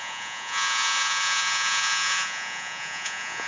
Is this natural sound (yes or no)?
no